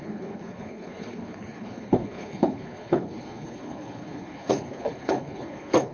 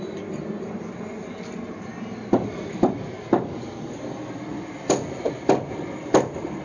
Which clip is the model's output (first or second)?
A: first